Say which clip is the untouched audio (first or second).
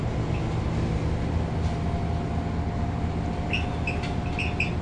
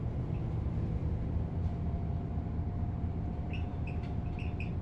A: first